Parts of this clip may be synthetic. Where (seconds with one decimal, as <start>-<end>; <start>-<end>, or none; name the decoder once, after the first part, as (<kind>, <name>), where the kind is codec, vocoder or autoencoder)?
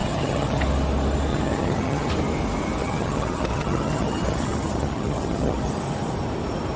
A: 0.0-0.6 (vocoder, HiFi-GAN); 1.3-2.1; 2.8-5.7